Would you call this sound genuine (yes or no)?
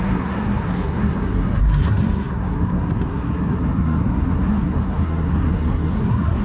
no